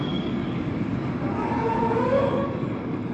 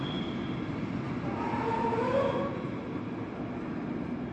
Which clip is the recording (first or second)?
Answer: second